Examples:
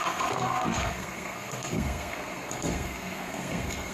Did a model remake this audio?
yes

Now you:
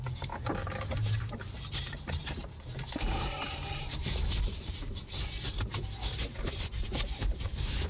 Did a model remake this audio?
yes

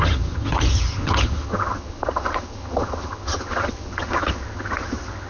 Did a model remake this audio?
yes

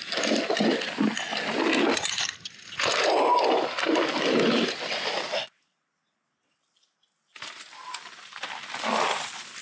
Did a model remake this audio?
no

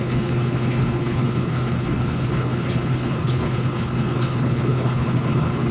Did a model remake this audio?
yes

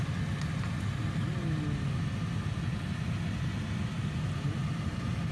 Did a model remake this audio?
no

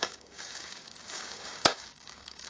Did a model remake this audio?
yes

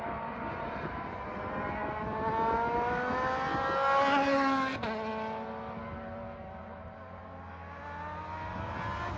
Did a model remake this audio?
no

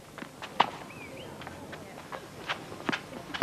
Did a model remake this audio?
no